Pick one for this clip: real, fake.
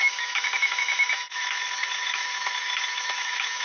fake